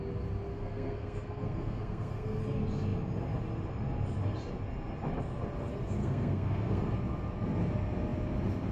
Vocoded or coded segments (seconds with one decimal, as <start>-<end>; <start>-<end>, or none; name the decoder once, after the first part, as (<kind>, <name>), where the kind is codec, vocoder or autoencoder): 0.5-2.4 (codec, SNAC); 6.0-6.9

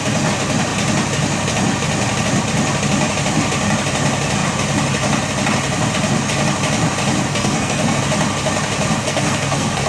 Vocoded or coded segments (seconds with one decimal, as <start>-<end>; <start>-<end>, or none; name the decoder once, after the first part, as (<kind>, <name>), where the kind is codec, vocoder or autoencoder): 7.3-8.0 (codec, SNAC); 9.0-9.9

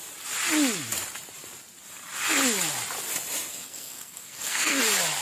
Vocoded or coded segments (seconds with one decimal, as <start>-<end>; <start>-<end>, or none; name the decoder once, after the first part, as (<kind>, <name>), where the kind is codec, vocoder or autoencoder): 3.5-4.8 (codec, SNAC)

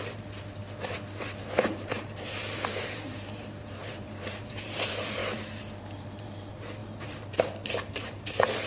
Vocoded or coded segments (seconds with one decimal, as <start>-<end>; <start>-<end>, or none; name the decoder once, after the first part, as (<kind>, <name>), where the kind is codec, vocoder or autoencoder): 0.0-0.6 (vocoder, BigVGAN v2); 1.2-5.2; 6.0-8.7

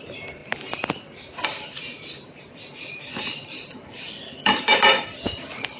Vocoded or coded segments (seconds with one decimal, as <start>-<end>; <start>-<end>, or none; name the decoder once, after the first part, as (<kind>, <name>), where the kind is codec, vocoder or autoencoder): 0.0-0.4 (vocoder, BigVGAN v2); 1.0-5.8

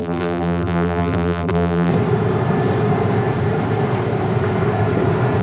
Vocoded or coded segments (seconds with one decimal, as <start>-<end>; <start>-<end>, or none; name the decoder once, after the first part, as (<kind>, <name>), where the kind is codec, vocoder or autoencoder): 0.0-1.9 (vocoder, BigVGAN v2)

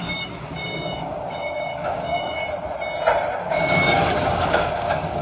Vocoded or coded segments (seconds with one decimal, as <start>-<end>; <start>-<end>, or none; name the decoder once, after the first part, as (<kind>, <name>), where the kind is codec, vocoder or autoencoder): 0.0-2.4 (codec, DAC); 3.4-5.2